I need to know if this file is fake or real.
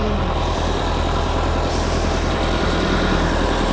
fake